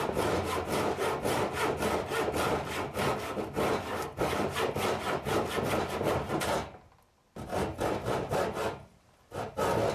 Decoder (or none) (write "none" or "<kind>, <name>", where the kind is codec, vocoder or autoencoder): none